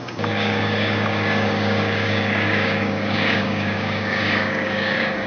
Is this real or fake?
fake